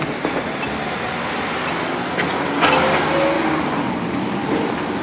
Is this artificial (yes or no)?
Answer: no